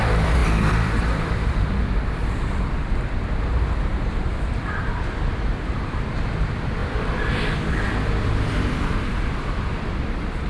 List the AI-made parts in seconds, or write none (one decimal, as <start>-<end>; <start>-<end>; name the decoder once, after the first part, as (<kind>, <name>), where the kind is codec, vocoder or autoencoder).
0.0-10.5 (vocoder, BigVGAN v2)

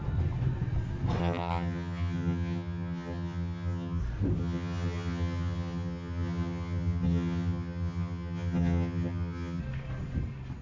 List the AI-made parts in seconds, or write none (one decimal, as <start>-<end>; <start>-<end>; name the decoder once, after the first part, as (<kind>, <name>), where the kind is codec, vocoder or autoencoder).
1.2-4.0 (vocoder, HiFi-GAN); 4.4-9.6

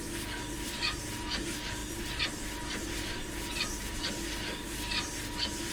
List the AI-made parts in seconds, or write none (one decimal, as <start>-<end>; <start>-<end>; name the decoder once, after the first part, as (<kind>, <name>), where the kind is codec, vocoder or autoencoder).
none

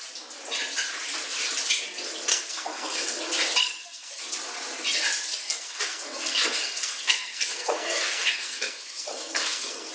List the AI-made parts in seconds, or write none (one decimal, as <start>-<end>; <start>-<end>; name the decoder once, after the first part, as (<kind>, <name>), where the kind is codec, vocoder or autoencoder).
2.3-3.2 (codec, SNAC); 3.6-4.2; 5.3-9.9

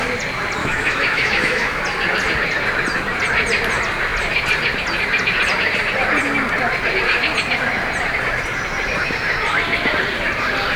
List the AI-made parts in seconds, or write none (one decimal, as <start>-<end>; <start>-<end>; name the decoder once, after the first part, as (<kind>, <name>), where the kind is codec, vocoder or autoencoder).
0.6-1.8 (autoencoder, DAC-VAE)